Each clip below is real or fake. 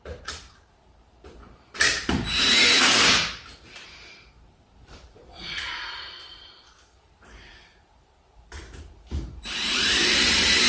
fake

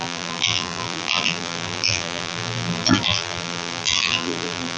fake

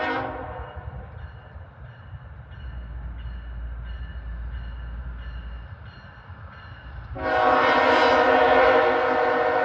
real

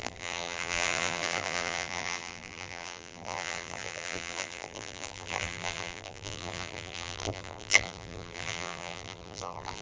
fake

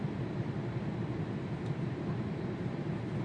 fake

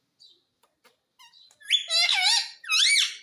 real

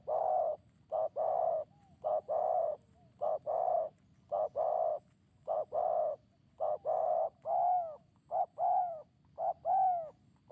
real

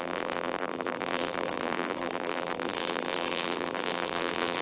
fake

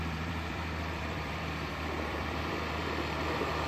fake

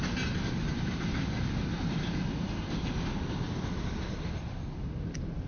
real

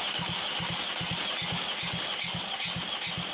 real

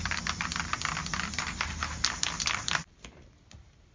fake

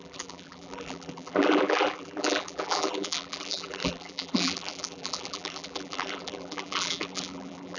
fake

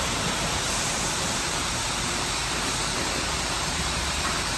fake